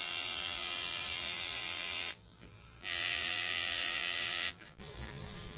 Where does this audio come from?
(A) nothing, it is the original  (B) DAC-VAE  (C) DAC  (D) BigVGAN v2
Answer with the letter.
D